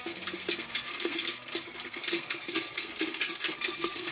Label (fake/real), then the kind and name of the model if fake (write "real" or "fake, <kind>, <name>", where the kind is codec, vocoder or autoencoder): fake, codec, SNAC